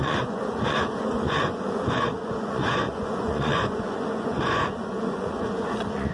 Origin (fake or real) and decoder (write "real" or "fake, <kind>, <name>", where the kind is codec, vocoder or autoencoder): fake, vocoder, Vocos